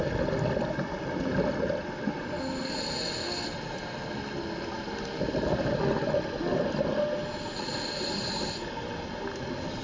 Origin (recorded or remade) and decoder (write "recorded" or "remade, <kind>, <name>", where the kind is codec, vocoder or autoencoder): recorded